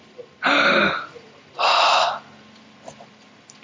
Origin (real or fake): real